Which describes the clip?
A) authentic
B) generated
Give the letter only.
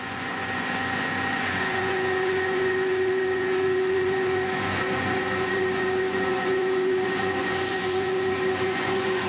B